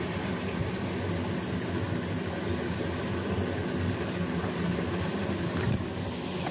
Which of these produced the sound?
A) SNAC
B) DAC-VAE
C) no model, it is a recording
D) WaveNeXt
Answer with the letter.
C